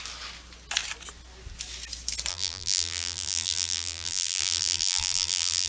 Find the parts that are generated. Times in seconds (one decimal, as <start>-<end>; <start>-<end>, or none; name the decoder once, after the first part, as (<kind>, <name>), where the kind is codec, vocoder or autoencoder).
2.3-5.7 (vocoder, BigVGAN v2)